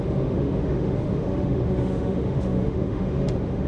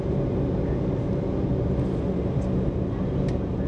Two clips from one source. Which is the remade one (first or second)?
first